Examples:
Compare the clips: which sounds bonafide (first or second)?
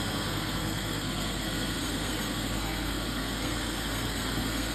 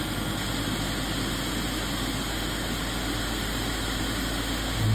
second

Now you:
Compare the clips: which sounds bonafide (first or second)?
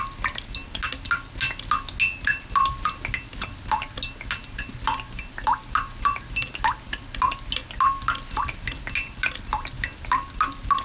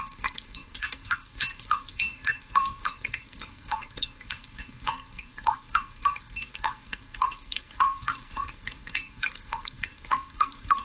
first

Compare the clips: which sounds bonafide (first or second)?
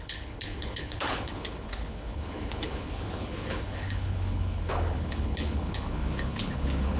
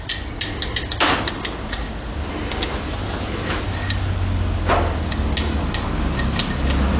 second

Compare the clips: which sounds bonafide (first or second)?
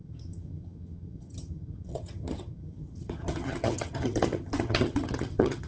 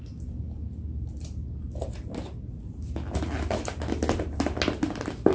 second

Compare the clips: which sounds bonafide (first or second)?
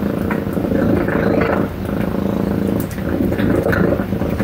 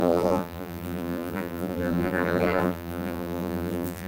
first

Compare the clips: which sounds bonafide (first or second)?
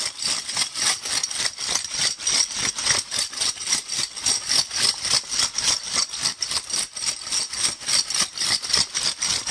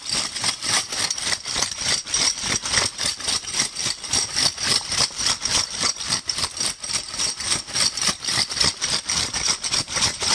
first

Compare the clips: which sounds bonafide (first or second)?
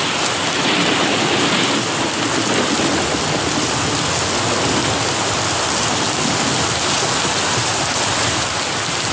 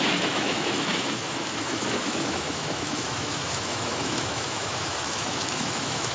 first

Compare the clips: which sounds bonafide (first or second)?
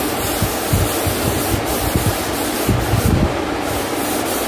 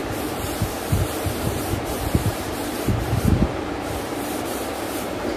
first